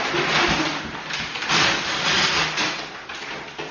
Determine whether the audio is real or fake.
real